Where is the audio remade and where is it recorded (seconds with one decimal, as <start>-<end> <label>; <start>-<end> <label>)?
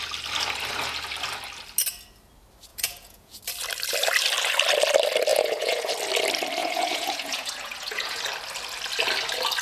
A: 0.0-2.7 recorded; 2.7-3.4 remade; 3.4-5.3 recorded; 5.3-5.9 remade; 5.9-6.6 recorded; 6.6-8.2 remade; 8.2-9.6 recorded